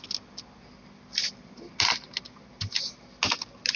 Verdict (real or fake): real